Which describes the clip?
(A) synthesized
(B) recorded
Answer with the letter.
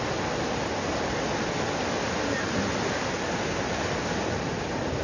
B